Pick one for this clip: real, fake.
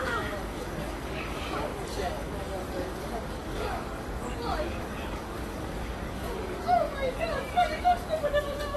fake